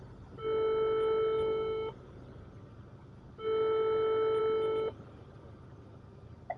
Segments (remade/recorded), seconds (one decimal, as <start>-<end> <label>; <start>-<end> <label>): 0.0-6.6 recorded